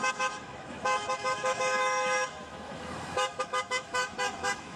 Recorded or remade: remade